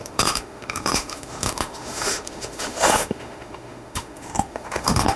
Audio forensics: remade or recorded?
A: remade